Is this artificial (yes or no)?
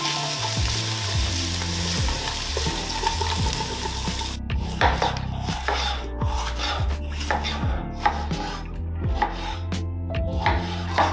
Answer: no